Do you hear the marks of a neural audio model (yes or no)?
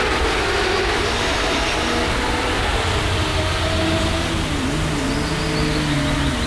no